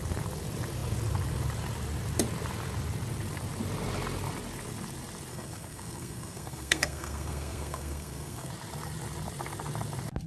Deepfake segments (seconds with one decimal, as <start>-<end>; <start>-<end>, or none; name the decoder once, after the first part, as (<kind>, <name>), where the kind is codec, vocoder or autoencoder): 5.3-8.5 (codec, SNAC)